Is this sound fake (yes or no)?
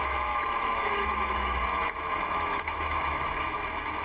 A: yes